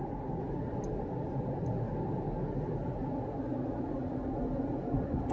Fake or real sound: real